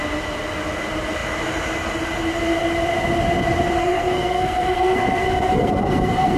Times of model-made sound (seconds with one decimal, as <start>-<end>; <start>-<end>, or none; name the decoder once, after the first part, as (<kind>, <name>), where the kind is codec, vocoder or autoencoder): 3.8-6.4 (codec, SNAC)